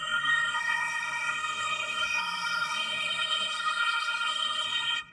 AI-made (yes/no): yes